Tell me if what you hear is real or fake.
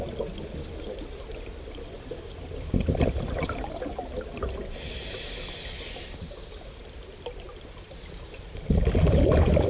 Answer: real